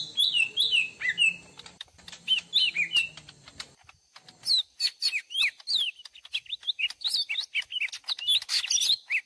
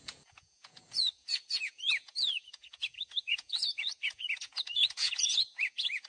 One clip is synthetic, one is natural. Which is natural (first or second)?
first